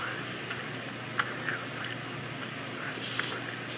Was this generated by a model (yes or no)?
no